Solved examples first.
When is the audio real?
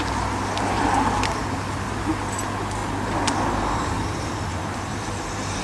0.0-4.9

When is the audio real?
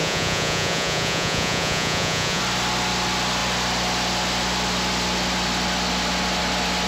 2.4-6.9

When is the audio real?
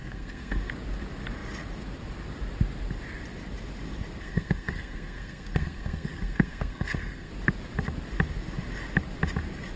0.7-4.2; 7.3-9.8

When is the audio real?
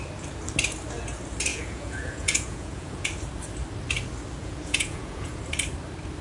0.0-1.5; 3.1-4.4; 5.4-6.2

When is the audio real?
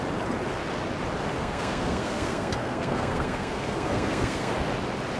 0.0-1.4; 4.5-5.2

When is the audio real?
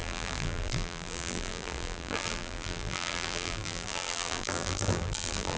none